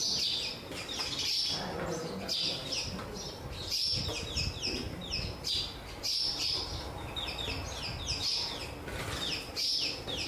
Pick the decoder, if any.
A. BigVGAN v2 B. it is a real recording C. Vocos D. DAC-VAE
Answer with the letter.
B